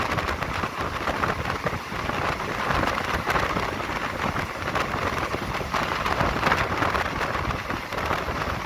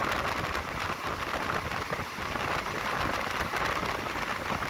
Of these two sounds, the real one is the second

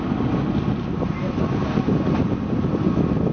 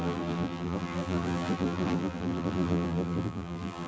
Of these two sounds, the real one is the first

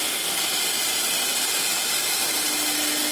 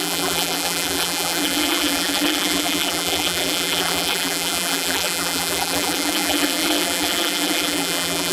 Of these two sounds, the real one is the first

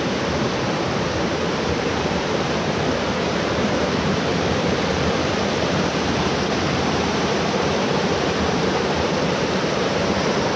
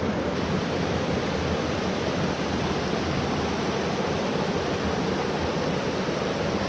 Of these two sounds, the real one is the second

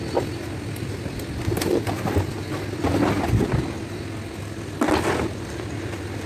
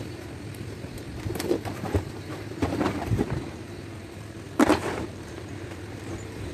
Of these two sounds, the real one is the first